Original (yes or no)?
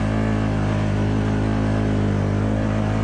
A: yes